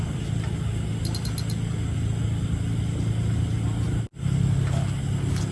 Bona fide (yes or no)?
yes